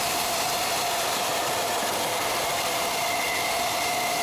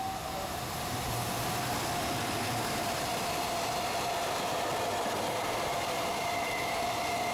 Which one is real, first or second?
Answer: second